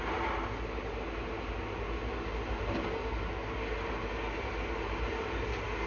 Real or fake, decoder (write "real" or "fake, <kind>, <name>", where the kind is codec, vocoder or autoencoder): real